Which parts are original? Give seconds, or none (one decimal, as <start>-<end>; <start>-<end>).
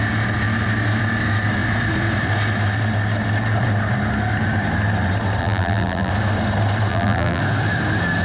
0.0-5.4; 6.1-6.9; 7.4-8.2